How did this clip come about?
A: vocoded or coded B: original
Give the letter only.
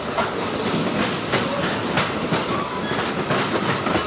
B